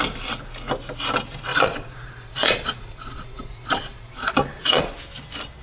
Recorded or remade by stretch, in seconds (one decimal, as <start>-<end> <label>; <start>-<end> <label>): 0.0-1.5 recorded; 1.5-4.9 remade; 4.9-5.6 recorded